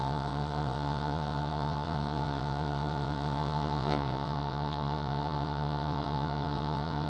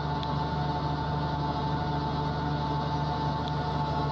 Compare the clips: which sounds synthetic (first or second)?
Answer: first